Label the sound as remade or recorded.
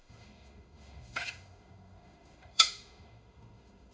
remade